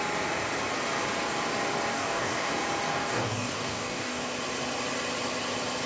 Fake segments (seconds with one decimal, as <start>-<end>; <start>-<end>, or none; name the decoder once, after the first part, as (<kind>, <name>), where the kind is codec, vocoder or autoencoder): 1.9-2.5 (codec, DAC); 2.9-4.2